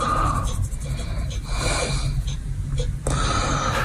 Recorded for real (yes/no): yes